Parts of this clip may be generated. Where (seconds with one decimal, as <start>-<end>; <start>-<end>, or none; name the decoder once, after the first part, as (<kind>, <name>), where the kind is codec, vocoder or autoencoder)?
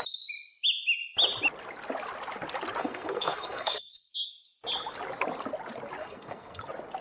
2.8-4.1 (codec, SNAC); 6.0-6.6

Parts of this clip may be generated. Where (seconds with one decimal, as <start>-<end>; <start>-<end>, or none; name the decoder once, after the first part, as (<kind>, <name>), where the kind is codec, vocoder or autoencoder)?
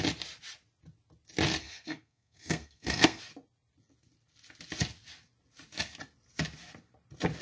1.6-3.2 (codec, SNAC)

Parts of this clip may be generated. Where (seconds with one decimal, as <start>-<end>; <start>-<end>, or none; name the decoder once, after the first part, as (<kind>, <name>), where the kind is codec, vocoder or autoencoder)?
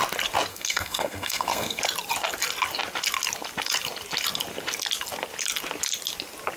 0.5-1.8 (codec, SNAC)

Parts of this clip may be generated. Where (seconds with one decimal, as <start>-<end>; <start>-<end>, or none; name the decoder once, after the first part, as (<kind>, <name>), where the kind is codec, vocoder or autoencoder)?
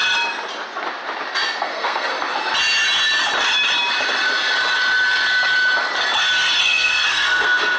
1.6-2.1 (codec, SNAC); 6.6-7.8